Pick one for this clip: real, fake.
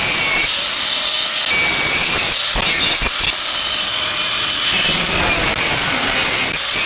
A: real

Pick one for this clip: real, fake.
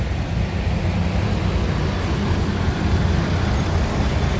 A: real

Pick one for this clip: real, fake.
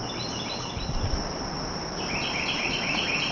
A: fake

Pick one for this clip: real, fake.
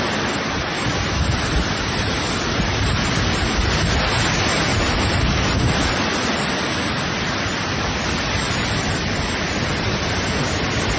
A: fake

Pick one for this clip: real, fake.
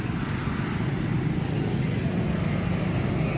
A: real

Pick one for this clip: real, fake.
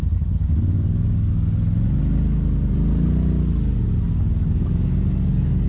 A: real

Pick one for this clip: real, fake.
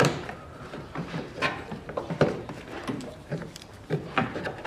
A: fake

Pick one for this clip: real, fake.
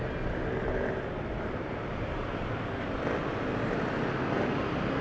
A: real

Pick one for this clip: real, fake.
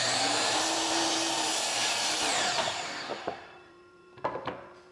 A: fake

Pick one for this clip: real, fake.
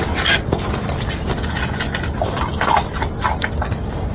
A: real